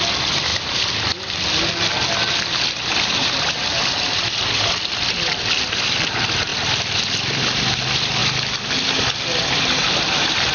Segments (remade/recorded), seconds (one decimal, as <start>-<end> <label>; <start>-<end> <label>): 0.0-0.5 remade; 0.5-3.4 recorded; 3.4-8.2 remade; 8.2-8.8 recorded; 8.8-10.5 remade